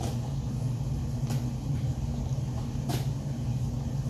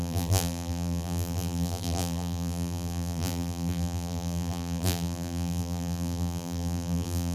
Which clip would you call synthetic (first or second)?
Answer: second